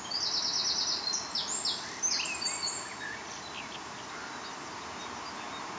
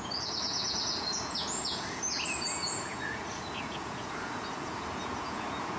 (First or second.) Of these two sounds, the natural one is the first